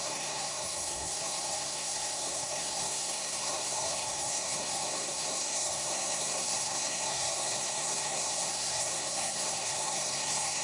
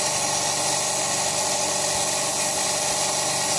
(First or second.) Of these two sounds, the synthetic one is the first